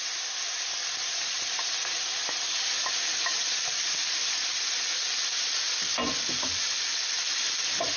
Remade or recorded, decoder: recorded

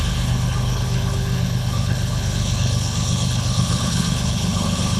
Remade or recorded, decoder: remade, codec, HILCodec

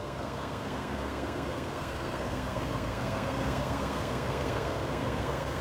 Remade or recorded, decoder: remade, codec, SNAC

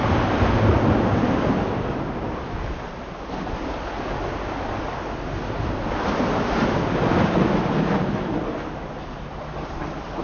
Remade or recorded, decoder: recorded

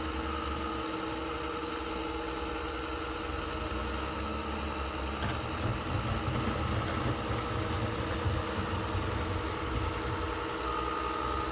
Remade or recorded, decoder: recorded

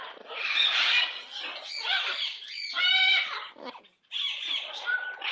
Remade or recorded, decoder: recorded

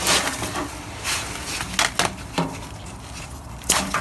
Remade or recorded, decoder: recorded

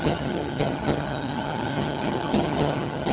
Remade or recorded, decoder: remade, vocoder, HiFi-GAN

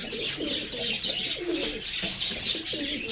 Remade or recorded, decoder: recorded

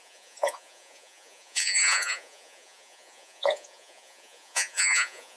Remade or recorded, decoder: remade, vocoder, Vocos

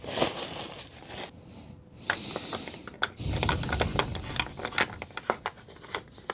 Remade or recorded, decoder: recorded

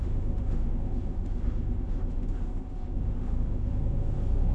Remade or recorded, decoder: remade, autoencoder, DAC-VAE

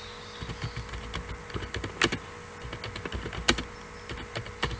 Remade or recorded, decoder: recorded